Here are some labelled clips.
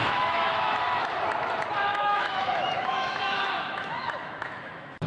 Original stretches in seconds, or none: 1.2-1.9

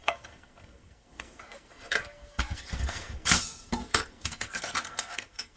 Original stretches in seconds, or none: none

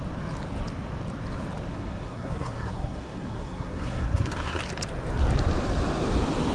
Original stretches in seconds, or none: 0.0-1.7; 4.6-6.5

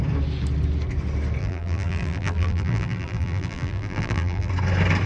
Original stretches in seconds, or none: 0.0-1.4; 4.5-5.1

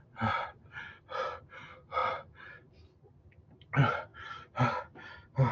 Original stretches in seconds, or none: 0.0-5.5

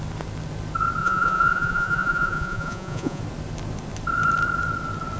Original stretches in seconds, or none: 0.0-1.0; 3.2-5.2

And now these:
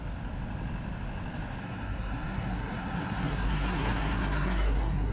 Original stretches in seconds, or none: 0.0-1.6

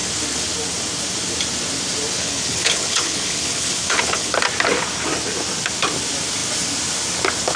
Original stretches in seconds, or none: 0.0-2.2; 4.3-7.6